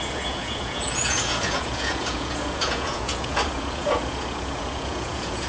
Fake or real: fake